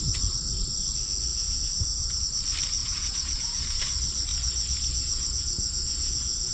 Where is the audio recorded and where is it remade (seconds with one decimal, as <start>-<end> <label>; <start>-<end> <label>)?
0.0-1.3 recorded; 1.3-2.2 remade; 2.2-2.8 recorded; 2.8-3.8 remade; 3.8-4.3 recorded; 4.3-6.5 remade